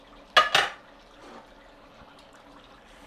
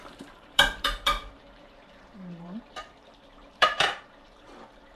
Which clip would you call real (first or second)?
first